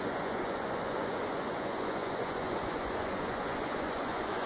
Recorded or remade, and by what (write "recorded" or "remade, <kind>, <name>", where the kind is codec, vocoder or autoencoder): remade, vocoder, Vocos